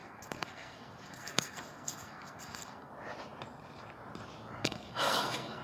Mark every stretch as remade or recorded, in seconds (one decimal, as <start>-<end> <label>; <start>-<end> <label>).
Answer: 0.0-2.9 remade; 2.9-4.6 recorded; 4.6-5.6 remade